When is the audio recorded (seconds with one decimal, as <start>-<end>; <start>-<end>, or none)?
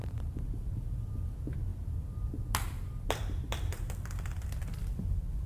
none